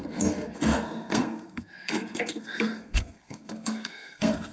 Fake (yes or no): yes